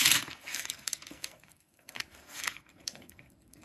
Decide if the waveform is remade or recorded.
remade